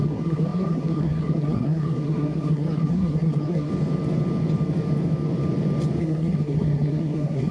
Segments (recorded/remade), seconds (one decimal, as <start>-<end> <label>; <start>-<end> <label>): 0.0-3.7 remade; 3.7-6.0 recorded; 6.0-7.5 remade